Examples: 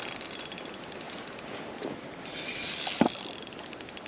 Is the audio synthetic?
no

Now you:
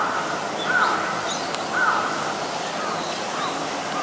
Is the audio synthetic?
no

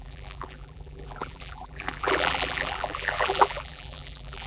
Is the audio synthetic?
yes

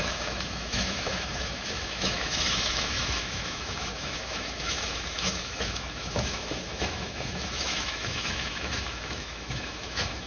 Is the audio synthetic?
yes